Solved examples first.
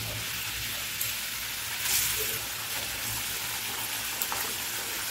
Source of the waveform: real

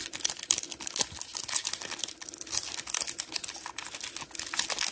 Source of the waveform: real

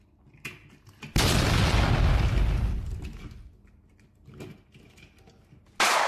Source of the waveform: real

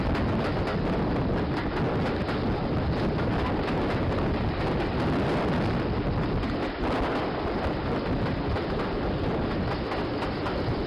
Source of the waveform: real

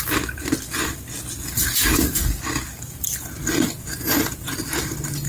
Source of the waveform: real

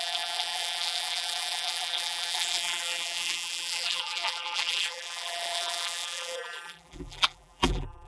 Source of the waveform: fake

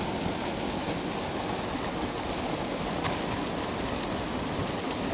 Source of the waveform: real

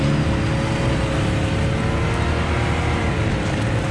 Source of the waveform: real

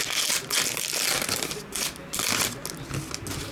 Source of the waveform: real